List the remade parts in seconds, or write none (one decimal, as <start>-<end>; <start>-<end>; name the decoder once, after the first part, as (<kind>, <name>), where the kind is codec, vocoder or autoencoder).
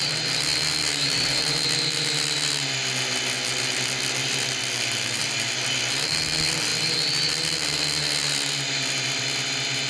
none